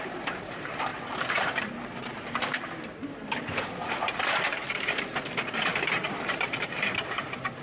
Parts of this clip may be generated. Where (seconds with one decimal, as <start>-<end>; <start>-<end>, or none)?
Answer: 0.0-7.6